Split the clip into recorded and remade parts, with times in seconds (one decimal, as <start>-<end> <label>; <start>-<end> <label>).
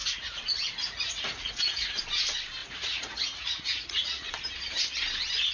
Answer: 0.0-2.0 remade; 2.0-2.6 recorded; 2.6-4.3 remade; 4.3-5.5 recorded